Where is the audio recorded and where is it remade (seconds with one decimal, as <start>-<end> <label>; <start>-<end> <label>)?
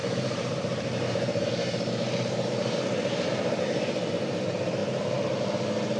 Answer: 0.0-3.6 remade; 3.6-6.0 recorded